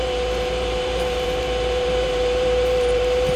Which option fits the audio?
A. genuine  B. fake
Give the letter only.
B